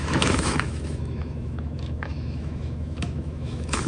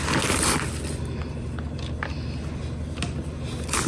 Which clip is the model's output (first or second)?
first